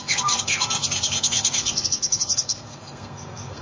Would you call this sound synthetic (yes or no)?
yes